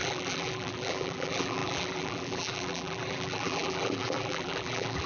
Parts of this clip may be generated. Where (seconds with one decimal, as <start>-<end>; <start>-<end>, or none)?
0.0-5.1